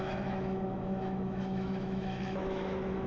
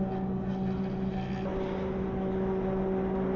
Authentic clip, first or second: second